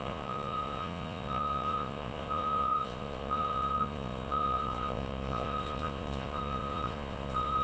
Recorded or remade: remade